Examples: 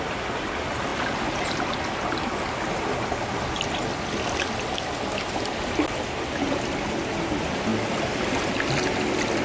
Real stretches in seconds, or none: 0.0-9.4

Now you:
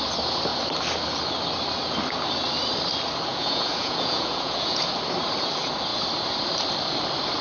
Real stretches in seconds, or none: 0.0-3.3; 4.9-7.4